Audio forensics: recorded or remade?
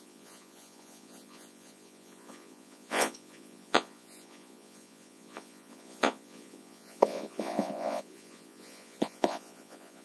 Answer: remade